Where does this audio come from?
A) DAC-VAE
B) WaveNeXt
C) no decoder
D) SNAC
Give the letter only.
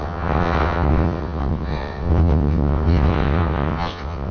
B